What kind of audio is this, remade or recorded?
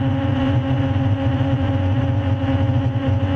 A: remade